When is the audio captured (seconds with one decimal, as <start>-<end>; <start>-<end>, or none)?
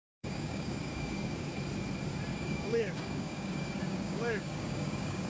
1.5-2.3